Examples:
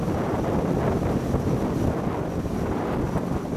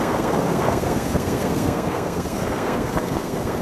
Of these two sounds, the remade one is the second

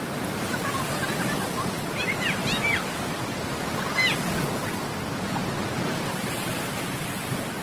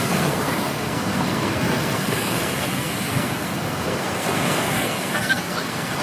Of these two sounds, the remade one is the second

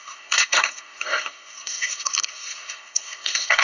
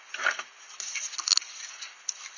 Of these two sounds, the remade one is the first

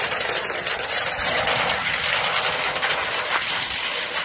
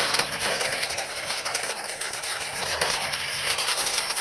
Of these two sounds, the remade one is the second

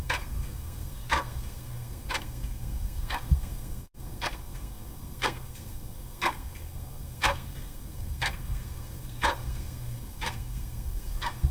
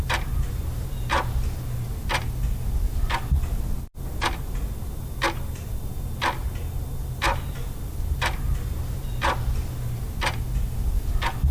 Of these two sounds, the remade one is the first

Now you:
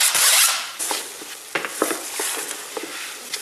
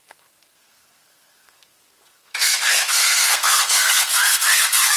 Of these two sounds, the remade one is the second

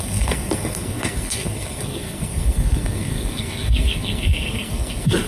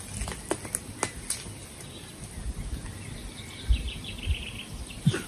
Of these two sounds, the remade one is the first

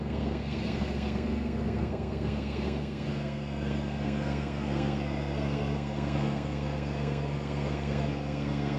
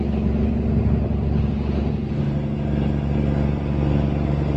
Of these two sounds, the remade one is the first